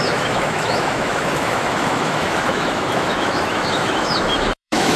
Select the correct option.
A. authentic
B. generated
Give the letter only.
B